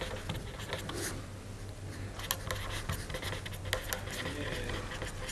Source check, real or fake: real